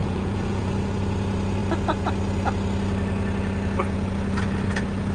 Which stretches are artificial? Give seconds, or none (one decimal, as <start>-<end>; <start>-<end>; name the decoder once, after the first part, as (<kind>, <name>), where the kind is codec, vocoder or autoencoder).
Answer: 0.0-0.7 (vocoder, Vocos)